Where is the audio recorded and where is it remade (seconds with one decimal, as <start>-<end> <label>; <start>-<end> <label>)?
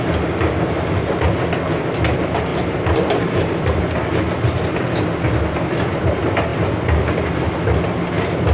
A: 0.0-2.5 recorded; 2.5-3.8 remade; 3.8-8.5 recorded